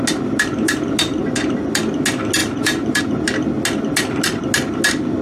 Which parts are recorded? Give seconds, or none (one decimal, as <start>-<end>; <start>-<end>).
0.0-2.4; 3.0-5.2